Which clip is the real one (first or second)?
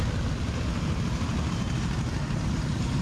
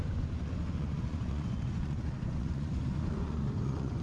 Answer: first